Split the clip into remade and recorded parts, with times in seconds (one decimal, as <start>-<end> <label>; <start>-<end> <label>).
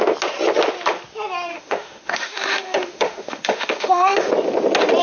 0.0-1.5 recorded; 1.5-4.3 remade; 4.3-5.0 recorded